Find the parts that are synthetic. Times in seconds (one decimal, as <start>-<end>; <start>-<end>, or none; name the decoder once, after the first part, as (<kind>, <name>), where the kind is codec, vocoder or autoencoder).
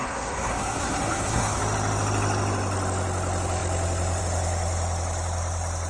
0.0-1.6 (codec, SNAC)